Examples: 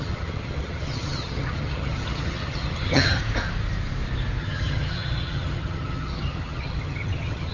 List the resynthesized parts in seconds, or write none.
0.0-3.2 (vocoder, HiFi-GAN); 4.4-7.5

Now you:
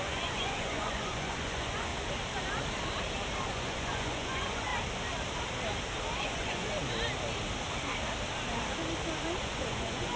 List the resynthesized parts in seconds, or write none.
0.0-1.9 (vocoder, Vocos); 3.5-4.7; 6.2-6.8; 9.4-10.2

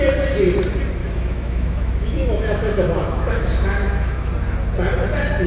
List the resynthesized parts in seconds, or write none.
1.0-4.3 (autoencoder, DAC-VAE)